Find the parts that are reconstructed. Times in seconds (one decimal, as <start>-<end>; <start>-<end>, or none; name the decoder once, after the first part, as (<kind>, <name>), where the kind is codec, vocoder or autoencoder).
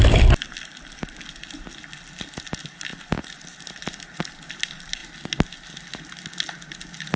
0.0-2.9 (vocoder, BigVGAN v2); 3.7-5.0; 6.4-7.2